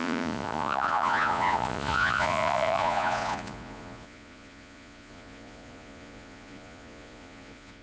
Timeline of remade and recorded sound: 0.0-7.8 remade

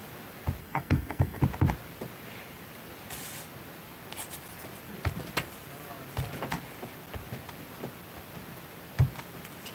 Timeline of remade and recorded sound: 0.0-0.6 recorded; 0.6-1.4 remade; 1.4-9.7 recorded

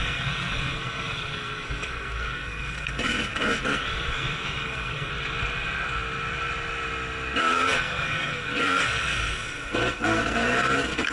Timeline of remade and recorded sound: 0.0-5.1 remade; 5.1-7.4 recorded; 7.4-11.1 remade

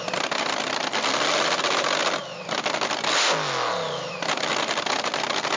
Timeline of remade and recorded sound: 0.0-5.6 recorded

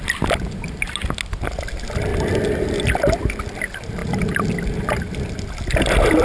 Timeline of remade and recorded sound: 0.0-2.1 recorded; 2.1-3.3 remade; 3.3-6.2 recorded

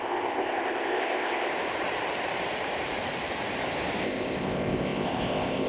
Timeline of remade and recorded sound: 0.0-1.5 remade; 1.5-4.0 recorded; 4.0-5.7 remade